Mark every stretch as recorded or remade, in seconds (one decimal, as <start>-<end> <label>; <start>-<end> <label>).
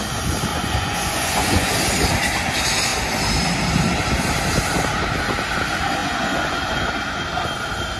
0.0-0.5 recorded; 0.5-1.7 remade; 1.7-6.0 recorded; 6.0-6.9 remade; 6.9-8.0 recorded